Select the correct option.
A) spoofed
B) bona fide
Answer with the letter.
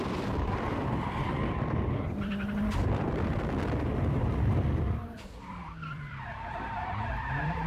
A